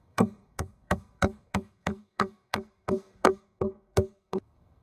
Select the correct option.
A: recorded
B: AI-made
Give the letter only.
B